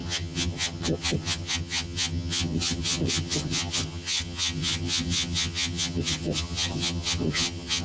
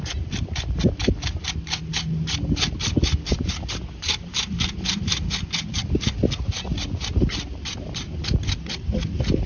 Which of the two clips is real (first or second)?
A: second